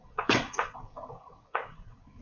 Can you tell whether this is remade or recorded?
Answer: remade